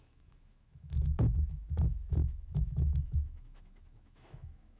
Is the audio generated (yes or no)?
yes